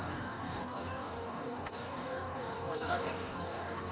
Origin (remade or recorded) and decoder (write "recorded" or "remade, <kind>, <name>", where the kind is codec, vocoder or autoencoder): remade, codec, DAC